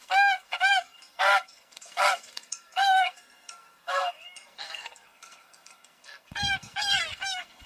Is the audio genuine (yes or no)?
no